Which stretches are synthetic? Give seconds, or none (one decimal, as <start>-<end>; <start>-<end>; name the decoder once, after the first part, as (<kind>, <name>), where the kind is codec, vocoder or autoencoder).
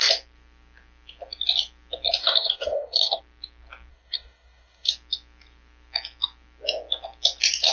2.2-3.2 (codec, DAC); 3.9-4.9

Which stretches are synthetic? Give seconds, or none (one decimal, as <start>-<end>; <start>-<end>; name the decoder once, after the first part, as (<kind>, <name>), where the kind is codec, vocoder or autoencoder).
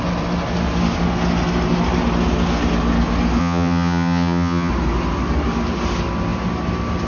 3.4-4.7 (vocoder, HiFi-GAN)